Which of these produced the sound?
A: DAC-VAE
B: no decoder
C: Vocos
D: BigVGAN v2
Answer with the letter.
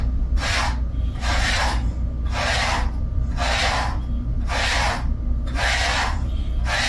B